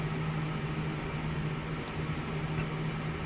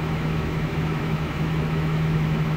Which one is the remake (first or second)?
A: second